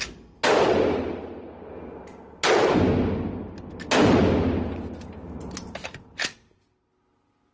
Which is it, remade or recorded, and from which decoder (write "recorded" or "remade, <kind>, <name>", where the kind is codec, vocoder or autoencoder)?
recorded